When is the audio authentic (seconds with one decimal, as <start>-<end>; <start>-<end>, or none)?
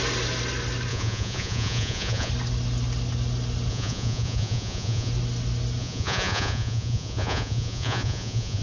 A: 0.0-0.9; 2.3-3.7; 5.1-5.8